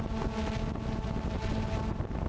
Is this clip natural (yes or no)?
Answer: yes